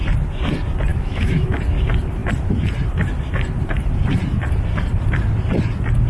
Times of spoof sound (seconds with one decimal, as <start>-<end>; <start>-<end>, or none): 0.9-1.6

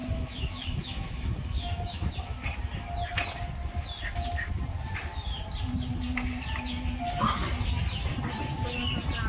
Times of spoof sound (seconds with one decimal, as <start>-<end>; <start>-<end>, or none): 0.0-2.1

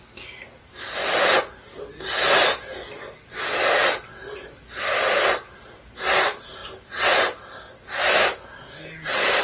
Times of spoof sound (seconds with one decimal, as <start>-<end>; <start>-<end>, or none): none